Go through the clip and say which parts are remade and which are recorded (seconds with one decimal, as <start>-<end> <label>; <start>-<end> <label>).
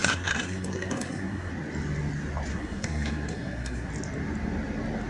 0.0-1.5 remade; 1.5-2.5 recorded; 2.5-3.9 remade; 3.9-5.1 recorded